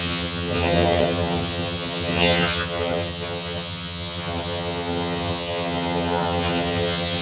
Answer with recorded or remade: remade